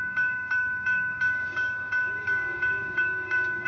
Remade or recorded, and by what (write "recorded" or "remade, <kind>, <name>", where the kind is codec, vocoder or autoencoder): remade, codec, DAC